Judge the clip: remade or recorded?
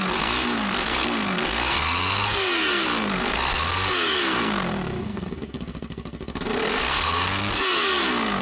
remade